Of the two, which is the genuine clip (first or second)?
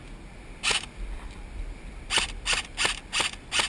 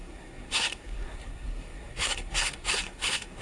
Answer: first